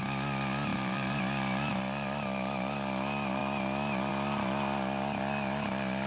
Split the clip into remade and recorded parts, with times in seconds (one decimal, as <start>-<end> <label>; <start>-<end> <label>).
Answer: 0.0-0.7 recorded; 0.7-1.2 remade; 1.2-6.1 recorded